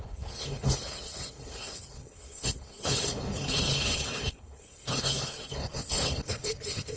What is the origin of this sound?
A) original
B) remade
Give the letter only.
B